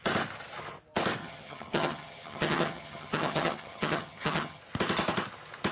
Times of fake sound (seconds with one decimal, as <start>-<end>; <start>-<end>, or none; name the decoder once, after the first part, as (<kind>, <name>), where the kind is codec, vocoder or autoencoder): 1.2-4.6 (vocoder, HiFi-GAN)